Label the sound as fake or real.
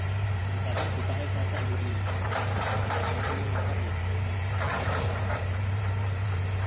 fake